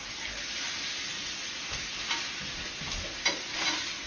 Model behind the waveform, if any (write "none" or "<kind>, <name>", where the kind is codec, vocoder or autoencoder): none